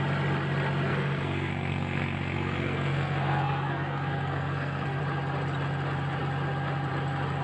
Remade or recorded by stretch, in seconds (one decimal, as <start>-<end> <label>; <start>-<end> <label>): 0.0-0.9 recorded; 0.9-5.0 remade; 5.0-7.4 recorded